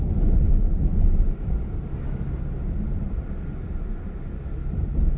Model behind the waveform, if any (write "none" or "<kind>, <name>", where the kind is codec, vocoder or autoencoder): none